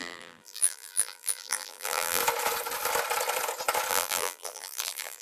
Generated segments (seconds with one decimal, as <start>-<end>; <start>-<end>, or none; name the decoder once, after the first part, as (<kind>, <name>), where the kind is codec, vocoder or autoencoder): 0.0-2.2 (vocoder, BigVGAN v2); 3.9-5.2